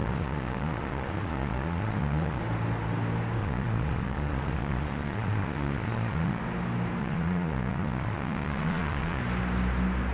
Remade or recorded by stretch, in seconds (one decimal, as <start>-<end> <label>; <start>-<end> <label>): 0.0-2.4 remade; 2.4-3.4 recorded; 3.4-6.4 remade; 6.4-7.0 recorded; 7.0-9.2 remade; 9.2-10.1 recorded